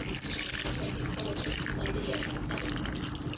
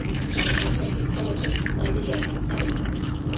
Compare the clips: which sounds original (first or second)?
first